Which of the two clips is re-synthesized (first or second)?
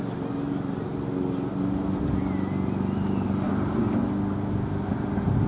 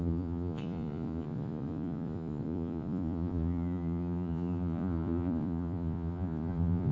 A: second